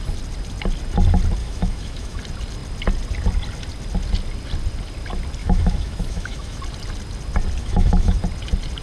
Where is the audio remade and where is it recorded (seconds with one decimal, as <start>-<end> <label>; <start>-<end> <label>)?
0.0-1.4 recorded; 1.4-2.2 remade; 2.2-5.4 recorded; 5.4-6.6 remade; 6.6-7.6 recorded; 7.6-8.2 remade; 8.2-8.8 recorded